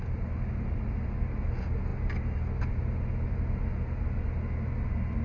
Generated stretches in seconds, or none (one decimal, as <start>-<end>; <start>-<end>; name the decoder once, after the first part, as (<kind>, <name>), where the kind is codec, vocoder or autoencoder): none